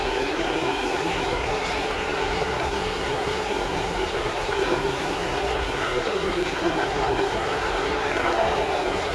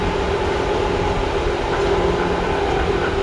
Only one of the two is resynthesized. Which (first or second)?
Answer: first